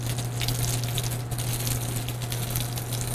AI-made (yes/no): no